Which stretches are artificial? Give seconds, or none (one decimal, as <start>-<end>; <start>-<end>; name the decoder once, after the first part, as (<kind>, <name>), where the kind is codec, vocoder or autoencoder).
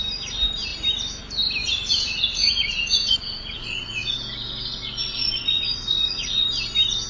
1.6-4.1 (vocoder, Vocos); 5.2-6.5